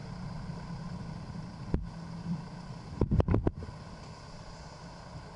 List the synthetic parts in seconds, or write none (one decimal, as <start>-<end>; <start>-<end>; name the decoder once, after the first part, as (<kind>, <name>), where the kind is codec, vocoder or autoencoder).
0.0-1.7 (vocoder, BigVGAN v2)